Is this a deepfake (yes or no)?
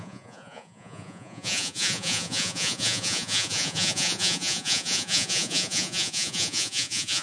yes